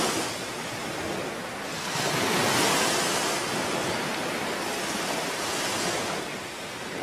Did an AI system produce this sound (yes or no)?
no